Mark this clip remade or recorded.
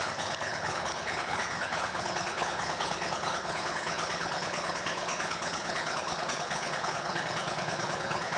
remade